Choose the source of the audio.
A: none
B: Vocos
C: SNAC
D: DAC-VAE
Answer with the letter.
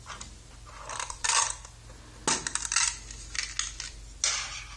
A